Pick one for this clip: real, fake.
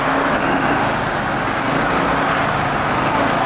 real